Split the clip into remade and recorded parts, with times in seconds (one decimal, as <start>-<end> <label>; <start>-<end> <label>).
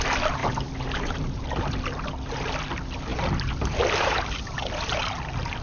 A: 0.0-5.6 recorded